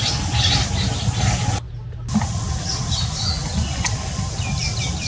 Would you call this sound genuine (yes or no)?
yes